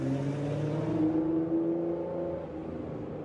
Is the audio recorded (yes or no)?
yes